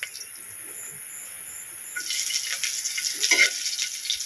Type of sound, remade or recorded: recorded